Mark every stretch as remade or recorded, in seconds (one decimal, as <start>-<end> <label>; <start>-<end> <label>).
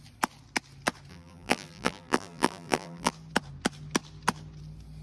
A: 0.0-1.1 recorded; 1.1-3.1 remade; 3.1-5.0 recorded